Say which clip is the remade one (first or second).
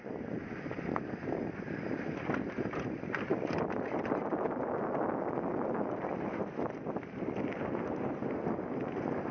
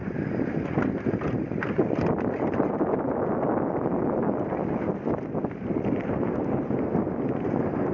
second